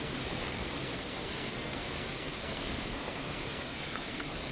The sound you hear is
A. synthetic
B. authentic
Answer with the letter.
A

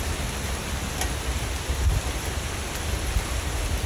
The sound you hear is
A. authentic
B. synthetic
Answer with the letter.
A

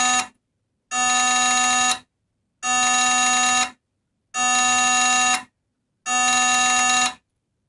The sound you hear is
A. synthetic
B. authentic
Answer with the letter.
B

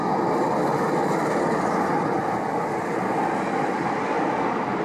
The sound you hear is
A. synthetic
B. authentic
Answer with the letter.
B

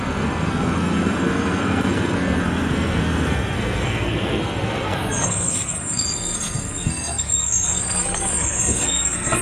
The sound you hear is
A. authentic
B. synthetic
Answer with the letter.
B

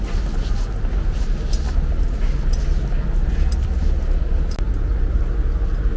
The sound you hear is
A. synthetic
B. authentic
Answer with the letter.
B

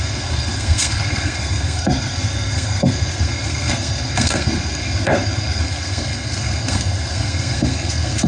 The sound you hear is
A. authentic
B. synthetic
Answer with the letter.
B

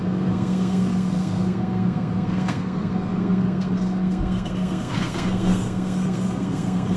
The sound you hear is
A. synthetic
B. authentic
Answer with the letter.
A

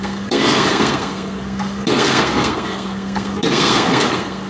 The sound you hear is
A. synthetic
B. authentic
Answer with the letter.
A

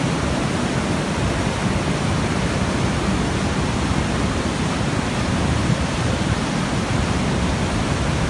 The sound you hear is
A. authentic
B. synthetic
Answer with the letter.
A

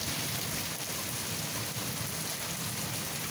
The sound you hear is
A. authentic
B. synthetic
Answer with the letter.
A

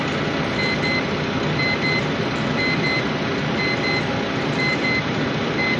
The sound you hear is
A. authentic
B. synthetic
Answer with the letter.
A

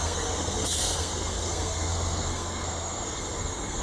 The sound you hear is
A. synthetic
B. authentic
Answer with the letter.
A